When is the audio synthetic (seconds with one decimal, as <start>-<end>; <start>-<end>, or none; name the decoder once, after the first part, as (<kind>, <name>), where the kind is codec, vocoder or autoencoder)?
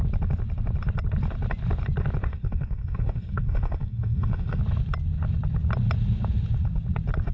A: 2.3-4.6 (codec, SNAC)